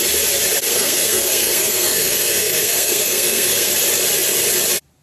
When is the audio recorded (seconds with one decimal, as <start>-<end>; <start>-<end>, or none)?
0.0-0.7; 3.7-5.0